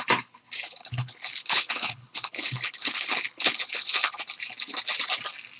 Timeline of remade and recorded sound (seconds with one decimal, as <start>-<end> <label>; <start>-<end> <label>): 0.0-0.8 recorded; 0.8-4.2 remade; 4.2-5.6 recorded